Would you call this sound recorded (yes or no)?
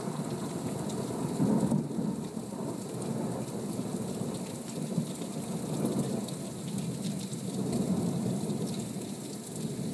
yes